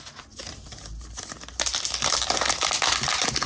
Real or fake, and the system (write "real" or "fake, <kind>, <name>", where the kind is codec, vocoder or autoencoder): real